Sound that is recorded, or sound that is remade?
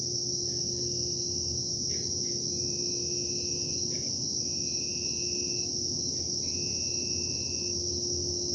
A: recorded